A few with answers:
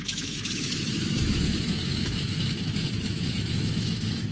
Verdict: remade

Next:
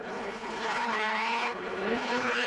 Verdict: remade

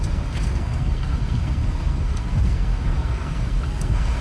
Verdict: remade